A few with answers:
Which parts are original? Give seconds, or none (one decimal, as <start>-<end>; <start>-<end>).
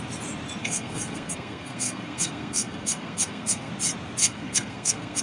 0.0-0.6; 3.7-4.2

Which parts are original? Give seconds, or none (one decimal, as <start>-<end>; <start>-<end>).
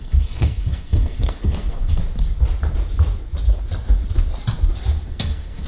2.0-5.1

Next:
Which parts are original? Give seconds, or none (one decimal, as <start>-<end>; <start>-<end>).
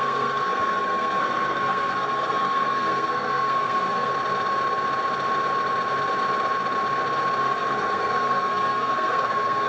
4.1-7.4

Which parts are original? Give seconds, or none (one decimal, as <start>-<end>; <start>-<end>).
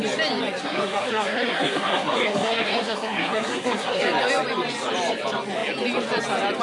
0.0-0.6; 4.0-6.6